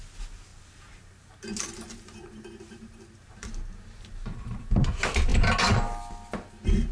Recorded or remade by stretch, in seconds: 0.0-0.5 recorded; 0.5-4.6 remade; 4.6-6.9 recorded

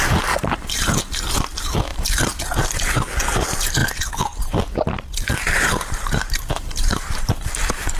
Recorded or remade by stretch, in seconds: 0.0-1.9 recorded; 1.9-2.4 remade; 2.4-5.3 recorded; 5.3-7.3 remade; 7.3-8.0 recorded

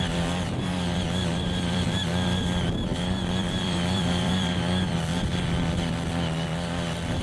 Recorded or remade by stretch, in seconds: 0.0-2.9 remade; 2.9-3.4 recorded; 3.4-5.1 remade; 5.1-7.2 recorded

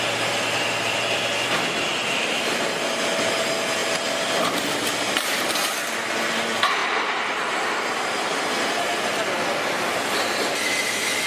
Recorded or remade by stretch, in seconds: 0.0-3.8 recorded; 3.8-4.4 remade; 4.4-6.8 recorded; 6.8-7.8 remade; 7.8-11.3 recorded